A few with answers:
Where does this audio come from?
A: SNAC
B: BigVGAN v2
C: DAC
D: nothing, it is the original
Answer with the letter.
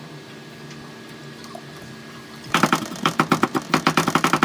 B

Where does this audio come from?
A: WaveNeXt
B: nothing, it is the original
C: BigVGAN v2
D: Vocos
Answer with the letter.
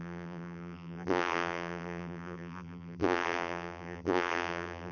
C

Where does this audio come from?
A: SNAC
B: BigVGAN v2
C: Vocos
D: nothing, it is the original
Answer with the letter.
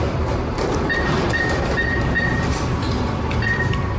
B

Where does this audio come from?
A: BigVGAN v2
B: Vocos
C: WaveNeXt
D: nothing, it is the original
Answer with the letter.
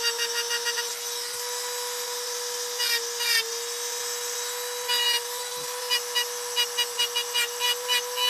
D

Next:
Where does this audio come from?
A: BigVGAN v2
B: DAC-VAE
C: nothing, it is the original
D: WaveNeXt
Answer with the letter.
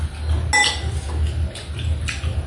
C